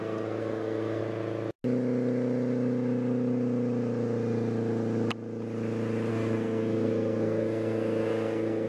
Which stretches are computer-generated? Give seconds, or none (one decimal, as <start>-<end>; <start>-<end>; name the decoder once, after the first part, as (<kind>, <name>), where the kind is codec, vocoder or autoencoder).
0.0-1.0 (codec, SNAC); 6.1-8.7